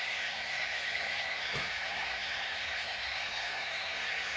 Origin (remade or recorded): remade